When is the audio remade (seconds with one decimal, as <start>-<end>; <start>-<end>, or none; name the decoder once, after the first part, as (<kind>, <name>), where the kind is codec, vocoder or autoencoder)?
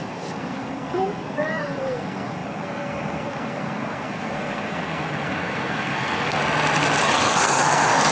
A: 0.0-6.4 (codec, SNAC); 7.0-8.1